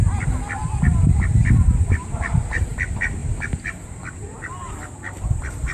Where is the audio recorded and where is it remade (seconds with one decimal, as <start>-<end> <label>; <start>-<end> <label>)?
0.0-5.7 recorded